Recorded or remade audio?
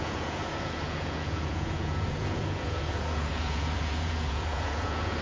remade